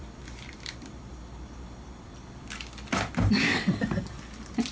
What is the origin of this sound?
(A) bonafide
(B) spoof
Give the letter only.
B